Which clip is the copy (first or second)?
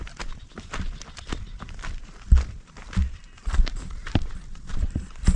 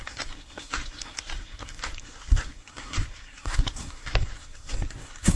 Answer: second